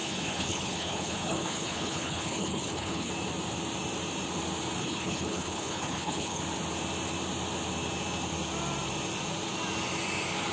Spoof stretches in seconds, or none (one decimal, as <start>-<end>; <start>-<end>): 0.0-3.1; 4.8-6.4